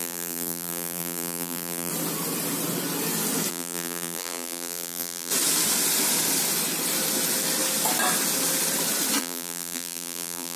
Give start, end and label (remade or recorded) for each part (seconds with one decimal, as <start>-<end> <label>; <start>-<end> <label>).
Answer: 0.0-1.9 remade; 1.9-3.5 recorded; 3.5-5.3 remade; 5.3-9.2 recorded; 9.2-10.6 remade